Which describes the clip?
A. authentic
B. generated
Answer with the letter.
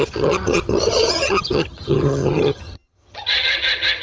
B